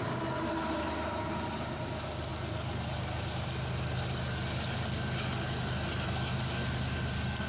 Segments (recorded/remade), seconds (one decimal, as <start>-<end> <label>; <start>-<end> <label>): 0.0-7.5 recorded